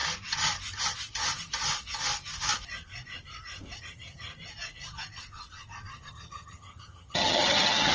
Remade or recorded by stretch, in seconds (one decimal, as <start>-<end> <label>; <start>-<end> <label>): 0.0-3.8 recorded; 3.8-4.3 remade; 4.3-6.1 recorded; 6.1-7.9 remade